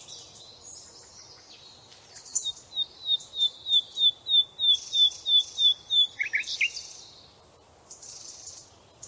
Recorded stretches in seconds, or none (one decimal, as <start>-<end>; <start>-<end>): 0.0-9.1